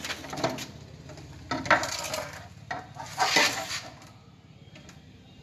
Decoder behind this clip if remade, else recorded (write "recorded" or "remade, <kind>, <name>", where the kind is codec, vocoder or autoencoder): recorded